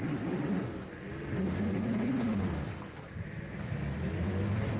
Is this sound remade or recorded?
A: recorded